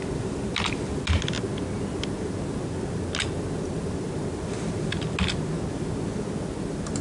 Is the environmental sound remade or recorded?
recorded